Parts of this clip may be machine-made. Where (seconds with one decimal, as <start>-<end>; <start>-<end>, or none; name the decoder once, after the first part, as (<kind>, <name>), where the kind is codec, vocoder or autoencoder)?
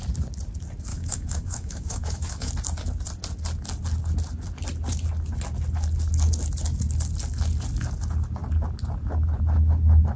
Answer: 0.9-2.5 (autoencoder, DAC-VAE)